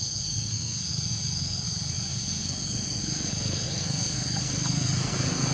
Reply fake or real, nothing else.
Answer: fake